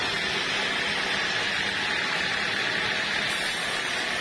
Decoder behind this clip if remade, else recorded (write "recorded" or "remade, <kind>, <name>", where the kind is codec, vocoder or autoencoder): recorded